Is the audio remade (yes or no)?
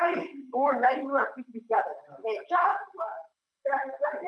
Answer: yes